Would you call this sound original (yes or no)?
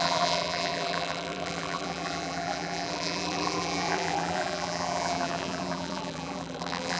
no